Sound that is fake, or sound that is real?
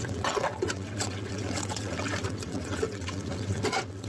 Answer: fake